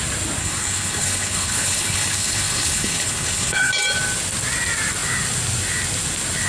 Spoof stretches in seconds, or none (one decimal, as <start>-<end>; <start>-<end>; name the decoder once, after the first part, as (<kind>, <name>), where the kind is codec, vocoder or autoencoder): 0.4-3.7 (codec, HILCodec)